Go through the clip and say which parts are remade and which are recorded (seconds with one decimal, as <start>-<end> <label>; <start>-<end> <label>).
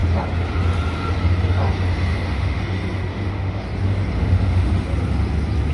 0.0-2.1 recorded; 2.1-2.6 remade; 2.6-3.1 recorded; 3.1-3.6 remade; 3.6-4.2 recorded; 4.2-4.7 remade; 4.7-5.7 recorded